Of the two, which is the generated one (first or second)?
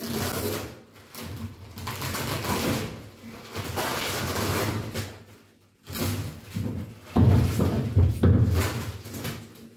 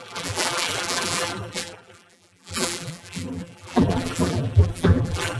second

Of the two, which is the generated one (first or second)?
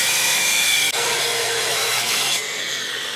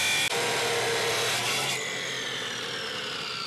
first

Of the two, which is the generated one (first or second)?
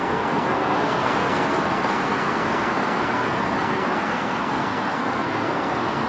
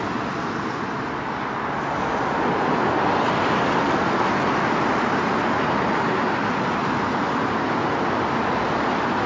first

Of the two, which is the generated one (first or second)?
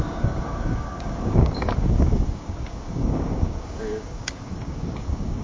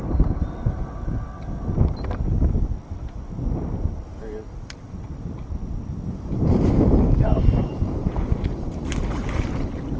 first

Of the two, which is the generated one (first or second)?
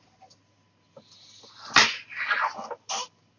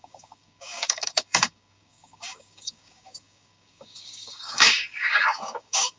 second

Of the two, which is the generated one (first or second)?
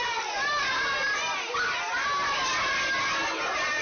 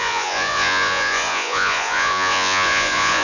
second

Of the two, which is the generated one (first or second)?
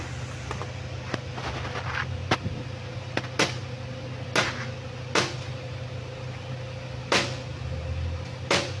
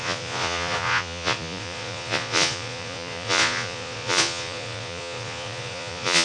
second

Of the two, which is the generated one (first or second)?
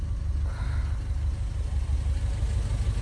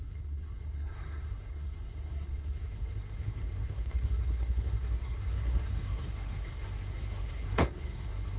second